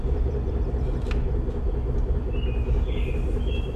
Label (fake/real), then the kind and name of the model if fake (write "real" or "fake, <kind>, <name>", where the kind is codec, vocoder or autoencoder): real